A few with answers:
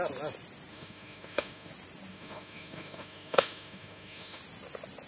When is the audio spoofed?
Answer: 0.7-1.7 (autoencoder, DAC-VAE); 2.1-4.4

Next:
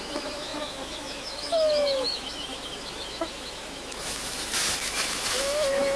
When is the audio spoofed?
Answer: 0.0-6.0 (autoencoder, DAC-VAE)

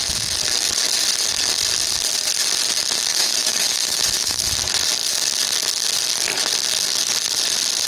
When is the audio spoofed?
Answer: 3.1-4.5 (autoencoder, DAC-VAE)

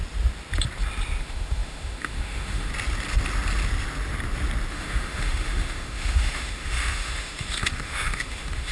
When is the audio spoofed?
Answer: 1.2-2.7 (autoencoder, DAC-VAE); 4.7-8.7

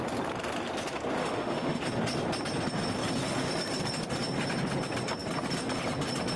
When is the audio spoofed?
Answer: 1.2-1.8 (autoencoder, DAC-VAE)

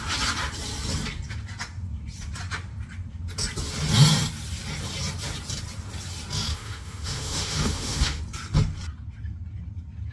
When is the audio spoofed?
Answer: 6.5-8.2 (autoencoder, DAC-VAE)